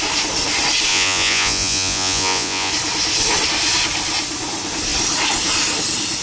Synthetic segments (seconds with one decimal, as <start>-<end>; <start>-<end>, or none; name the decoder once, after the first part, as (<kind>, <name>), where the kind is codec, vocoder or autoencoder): 0.9-2.7 (vocoder, Vocos)